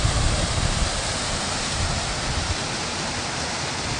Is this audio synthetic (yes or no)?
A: yes